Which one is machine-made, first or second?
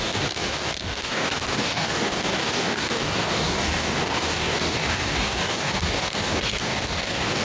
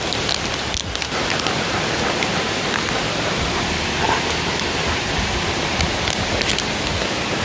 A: first